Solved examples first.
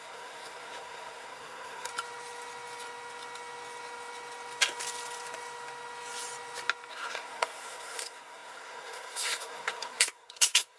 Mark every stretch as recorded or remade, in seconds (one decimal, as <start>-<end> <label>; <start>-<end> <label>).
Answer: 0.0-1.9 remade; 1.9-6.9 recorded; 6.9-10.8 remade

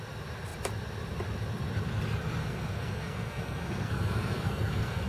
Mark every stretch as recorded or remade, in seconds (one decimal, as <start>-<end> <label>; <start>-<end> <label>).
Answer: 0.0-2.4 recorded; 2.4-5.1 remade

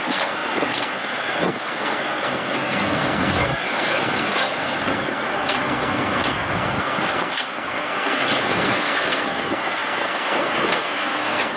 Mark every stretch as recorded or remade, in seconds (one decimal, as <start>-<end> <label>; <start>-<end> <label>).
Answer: 0.0-11.6 remade

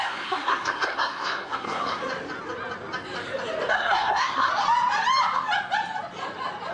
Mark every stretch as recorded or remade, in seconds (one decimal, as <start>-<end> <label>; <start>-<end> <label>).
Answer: 0.0-2.0 remade; 2.0-3.7 recorded; 3.7-4.5 remade; 4.5-6.7 recorded

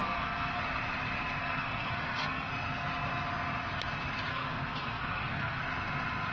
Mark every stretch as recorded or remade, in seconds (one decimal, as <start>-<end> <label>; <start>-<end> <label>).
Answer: 0.0-0.6 remade; 0.6-1.4 recorded; 1.4-2.5 remade; 2.5-4.3 recorded; 4.3-5.6 remade; 5.6-6.3 recorded